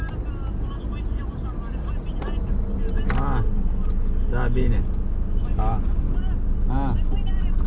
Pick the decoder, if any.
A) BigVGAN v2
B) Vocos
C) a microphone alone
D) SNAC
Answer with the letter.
C